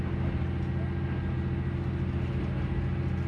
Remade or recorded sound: recorded